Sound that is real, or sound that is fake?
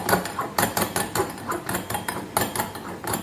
real